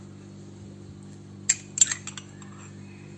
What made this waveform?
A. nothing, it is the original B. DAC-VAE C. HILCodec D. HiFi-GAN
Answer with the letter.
A